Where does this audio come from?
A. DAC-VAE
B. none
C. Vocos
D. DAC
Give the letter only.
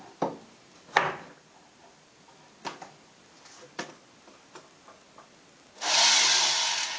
B